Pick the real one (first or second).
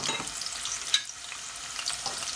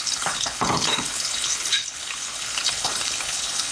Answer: first